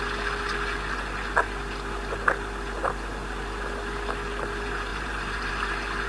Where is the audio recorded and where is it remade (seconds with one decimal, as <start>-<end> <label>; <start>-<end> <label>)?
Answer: 0.0-4.9 recorded; 4.9-5.5 remade; 5.5-6.1 recorded